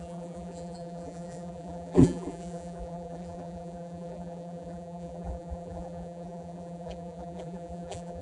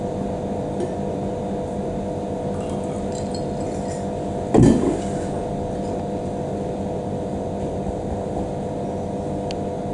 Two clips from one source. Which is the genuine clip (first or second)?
second